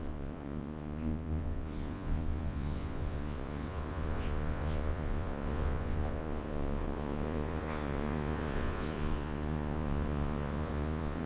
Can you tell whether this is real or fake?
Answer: fake